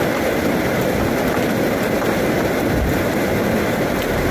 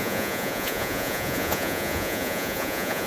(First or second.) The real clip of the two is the first